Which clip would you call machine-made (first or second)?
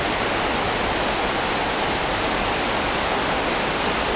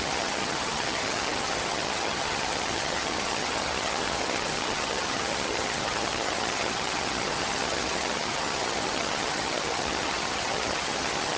second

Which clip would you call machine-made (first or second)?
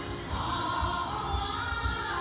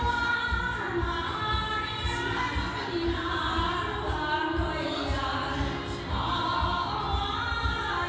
first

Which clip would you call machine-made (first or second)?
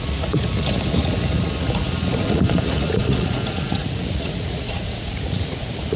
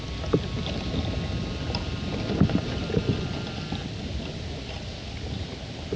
first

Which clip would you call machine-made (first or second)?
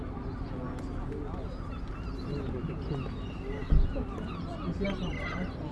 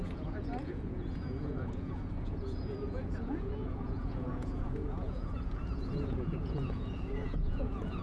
second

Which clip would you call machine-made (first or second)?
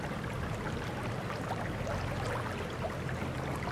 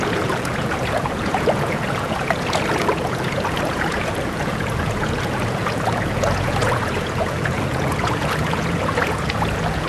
second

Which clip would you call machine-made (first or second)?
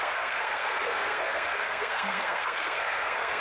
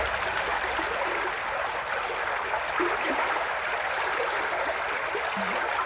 first